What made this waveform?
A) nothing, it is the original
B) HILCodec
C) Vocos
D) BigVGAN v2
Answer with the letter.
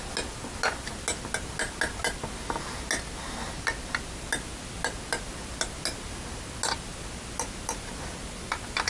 A